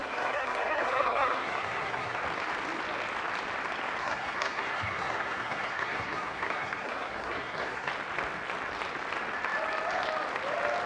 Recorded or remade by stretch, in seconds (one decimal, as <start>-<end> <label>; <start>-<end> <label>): 0.0-2.2 remade; 2.2-4.0 recorded; 4.0-7.9 remade; 7.9-10.9 recorded